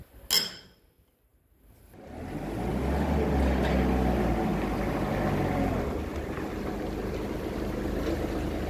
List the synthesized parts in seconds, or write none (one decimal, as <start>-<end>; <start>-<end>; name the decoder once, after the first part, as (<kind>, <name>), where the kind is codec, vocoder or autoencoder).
none